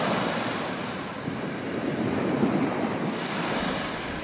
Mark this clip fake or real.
real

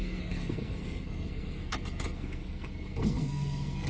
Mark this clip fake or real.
fake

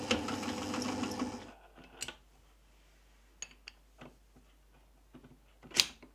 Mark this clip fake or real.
real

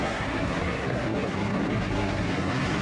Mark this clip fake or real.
fake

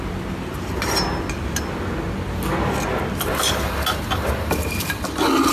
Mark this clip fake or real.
real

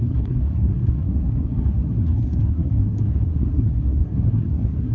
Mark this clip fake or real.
fake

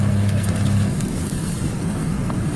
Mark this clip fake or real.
fake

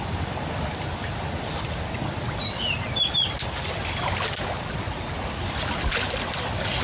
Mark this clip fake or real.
real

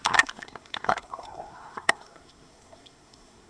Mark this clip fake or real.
fake